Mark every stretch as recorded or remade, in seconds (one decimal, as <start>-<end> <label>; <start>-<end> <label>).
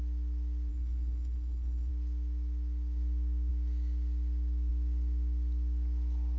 0.0-0.7 recorded; 0.7-1.9 remade; 1.9-6.4 recorded